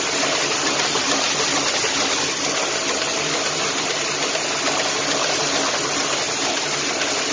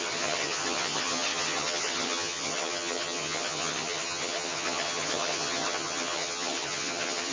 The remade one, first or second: second